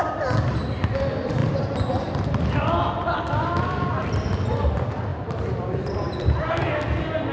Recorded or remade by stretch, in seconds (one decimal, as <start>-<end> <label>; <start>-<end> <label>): 0.0-1.4 recorded; 1.4-3.9 remade; 3.9-5.1 recorded; 5.1-5.8 remade; 5.8-7.3 recorded